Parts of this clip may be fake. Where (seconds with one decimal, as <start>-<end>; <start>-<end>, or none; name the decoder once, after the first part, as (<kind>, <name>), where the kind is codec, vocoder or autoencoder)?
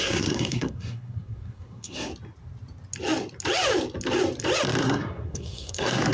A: 0.0-2.1 (codec, SNAC); 4.8-6.1